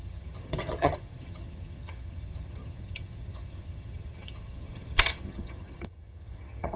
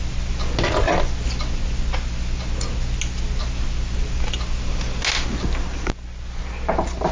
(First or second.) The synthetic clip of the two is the first